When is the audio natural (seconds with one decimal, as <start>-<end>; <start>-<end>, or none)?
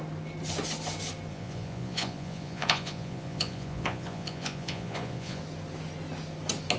0.0-1.3; 5.4-6.8